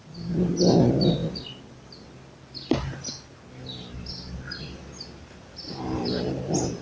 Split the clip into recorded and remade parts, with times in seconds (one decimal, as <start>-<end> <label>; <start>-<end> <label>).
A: 0.0-6.8 recorded